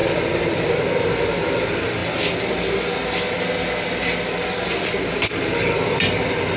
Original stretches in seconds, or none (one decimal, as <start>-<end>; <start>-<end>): 0.7-6.6